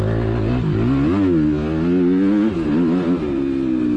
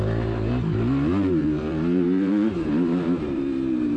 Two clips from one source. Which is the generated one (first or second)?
second